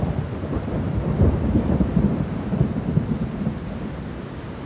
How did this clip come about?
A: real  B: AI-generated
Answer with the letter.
A